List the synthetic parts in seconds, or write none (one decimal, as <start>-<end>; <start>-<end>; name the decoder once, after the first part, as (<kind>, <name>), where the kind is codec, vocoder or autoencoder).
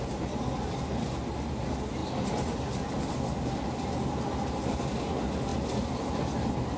none